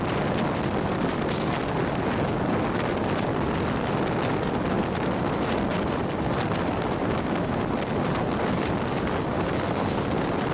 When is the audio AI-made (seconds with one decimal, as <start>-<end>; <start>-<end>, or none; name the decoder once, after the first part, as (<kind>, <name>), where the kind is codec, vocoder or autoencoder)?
none